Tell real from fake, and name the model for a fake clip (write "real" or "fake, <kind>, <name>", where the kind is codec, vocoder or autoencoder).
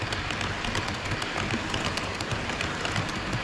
real